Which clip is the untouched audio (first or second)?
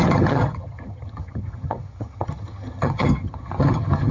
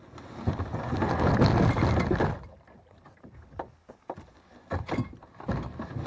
second